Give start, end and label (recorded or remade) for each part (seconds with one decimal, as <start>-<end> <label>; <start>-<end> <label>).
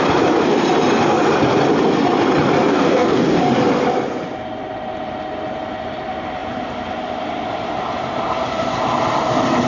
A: 0.0-2.7 recorded; 2.7-3.4 remade; 3.4-9.7 recorded